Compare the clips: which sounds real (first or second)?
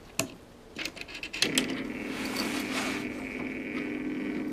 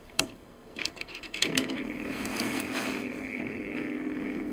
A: first